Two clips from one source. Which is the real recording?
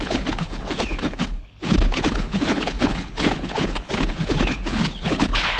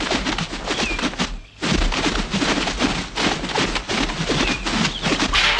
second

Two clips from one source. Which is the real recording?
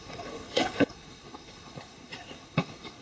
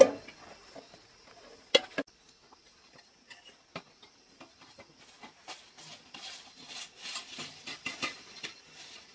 second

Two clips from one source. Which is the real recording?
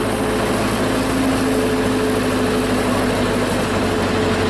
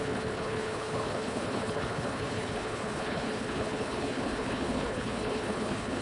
first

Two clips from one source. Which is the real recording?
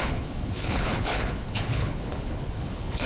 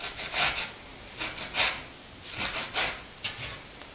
second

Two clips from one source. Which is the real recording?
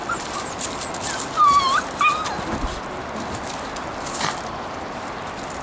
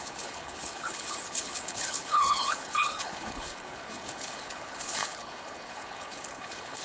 first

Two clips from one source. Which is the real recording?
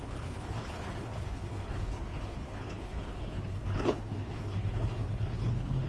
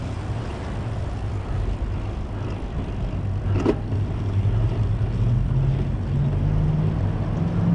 second